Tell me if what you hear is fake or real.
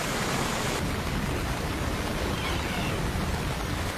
real